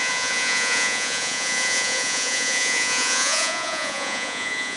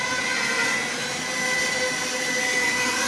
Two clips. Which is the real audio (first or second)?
second